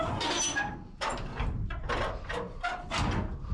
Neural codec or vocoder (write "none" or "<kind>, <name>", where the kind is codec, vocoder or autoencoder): none